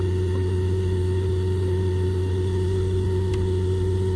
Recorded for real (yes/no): yes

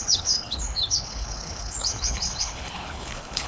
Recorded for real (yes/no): no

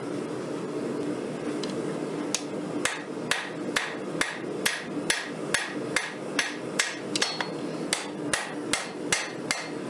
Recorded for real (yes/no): yes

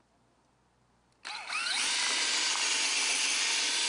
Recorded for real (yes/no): yes